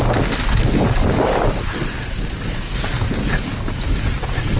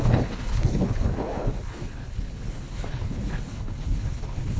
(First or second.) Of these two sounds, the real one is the first